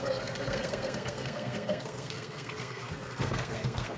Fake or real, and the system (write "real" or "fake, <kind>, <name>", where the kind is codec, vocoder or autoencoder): fake, codec, SNAC